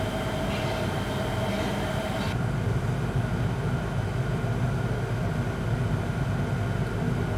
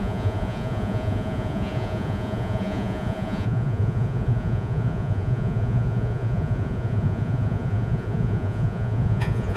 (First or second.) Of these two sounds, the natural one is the first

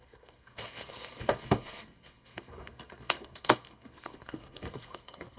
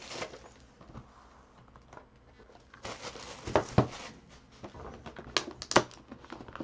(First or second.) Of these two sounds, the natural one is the second